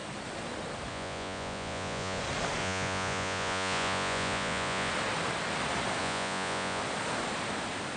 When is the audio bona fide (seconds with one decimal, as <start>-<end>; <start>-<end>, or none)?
0.0-0.9; 2.2-2.6; 4.9-6.0; 6.8-8.0